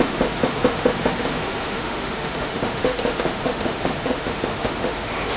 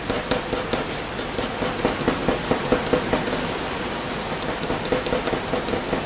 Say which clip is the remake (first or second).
first